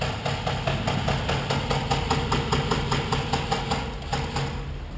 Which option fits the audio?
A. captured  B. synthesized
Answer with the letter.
A